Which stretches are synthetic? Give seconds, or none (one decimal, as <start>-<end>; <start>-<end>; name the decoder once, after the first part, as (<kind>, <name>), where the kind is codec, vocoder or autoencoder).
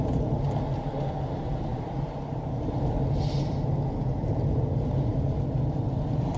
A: 1.7-2.8 (vocoder, BigVGAN v2)